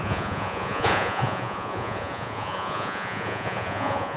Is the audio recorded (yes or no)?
no